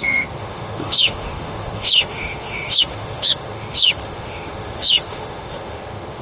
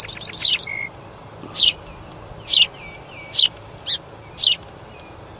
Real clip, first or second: second